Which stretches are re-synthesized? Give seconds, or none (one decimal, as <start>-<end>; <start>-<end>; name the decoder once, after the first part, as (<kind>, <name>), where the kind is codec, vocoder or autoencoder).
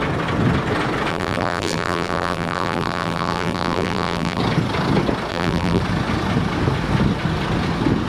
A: 1.1-4.4 (vocoder, BigVGAN v2); 5.3-5.8